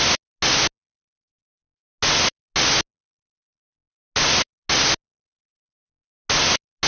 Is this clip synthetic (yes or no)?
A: no